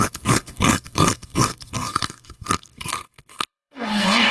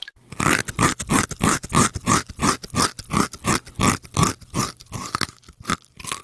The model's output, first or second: first